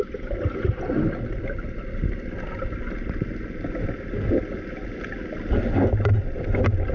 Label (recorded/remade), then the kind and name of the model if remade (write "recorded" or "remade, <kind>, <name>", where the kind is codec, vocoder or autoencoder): recorded